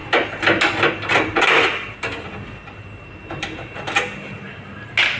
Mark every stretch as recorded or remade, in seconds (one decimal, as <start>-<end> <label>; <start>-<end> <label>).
0.0-5.2 recorded